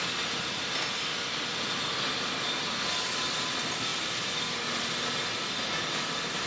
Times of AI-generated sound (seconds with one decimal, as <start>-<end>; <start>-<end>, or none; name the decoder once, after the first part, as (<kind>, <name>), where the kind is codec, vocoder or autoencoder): none